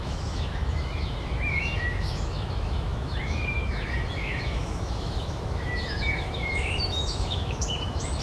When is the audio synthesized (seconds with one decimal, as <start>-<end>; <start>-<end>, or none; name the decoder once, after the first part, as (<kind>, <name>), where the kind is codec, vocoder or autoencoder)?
0.0-8.2 (autoencoder, DAC-VAE)